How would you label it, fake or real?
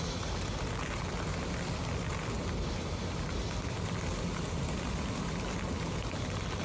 real